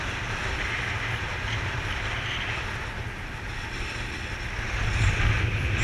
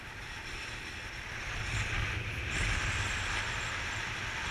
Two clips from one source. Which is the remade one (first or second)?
second